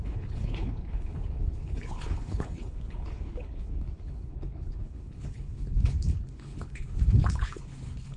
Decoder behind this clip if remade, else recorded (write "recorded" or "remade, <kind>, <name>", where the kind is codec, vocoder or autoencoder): remade, codec, HILCodec